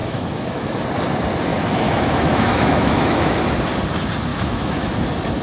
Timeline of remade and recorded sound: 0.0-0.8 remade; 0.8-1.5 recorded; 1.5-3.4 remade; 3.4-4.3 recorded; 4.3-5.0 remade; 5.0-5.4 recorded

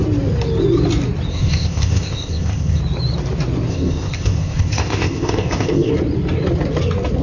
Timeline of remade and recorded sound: 0.0-1.3 recorded; 1.3-2.8 remade; 2.8-3.7 recorded; 3.7-5.9 remade; 5.9-7.2 recorded

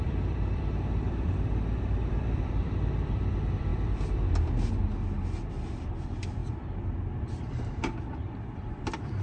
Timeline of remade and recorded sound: 0.0-3.7 remade; 3.7-5.5 recorded; 5.5-6.4 remade; 6.4-7.2 recorded; 7.2-9.2 remade

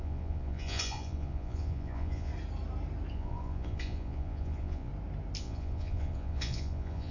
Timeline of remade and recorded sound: 0.0-2.3 remade; 2.3-3.1 recorded; 3.1-4.9 remade; 4.9-5.4 recorded; 5.4-7.1 remade

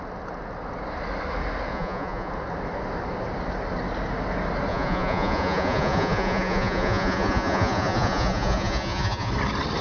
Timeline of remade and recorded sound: 0.0-1.7 recorded; 1.7-2.3 remade; 2.3-4.7 recorded; 4.7-9.3 remade; 9.3-9.8 recorded

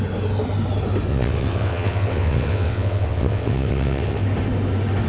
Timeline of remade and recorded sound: 0.0-1.1 recorded; 1.1-4.2 remade; 4.2-5.1 recorded